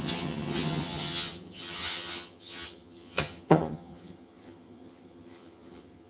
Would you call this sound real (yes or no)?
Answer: no